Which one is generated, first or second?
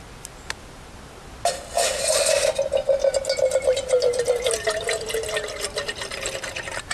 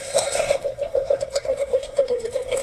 second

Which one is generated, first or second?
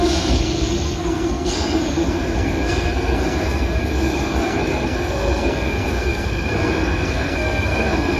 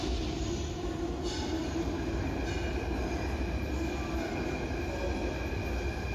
first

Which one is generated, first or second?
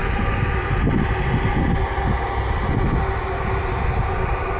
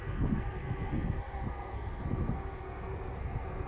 second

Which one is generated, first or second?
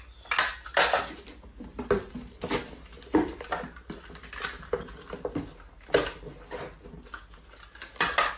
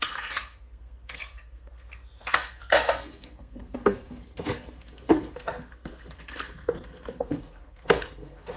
second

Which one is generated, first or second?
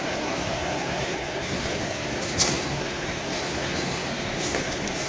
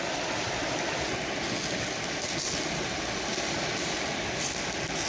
first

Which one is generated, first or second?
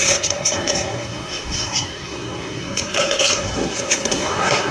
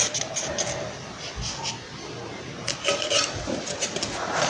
first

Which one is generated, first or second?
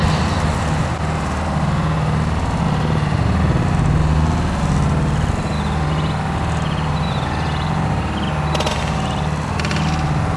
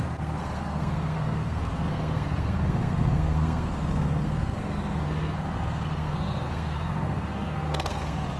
second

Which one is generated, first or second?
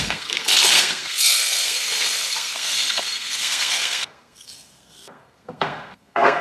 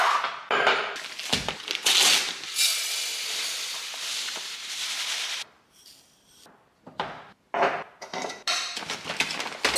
first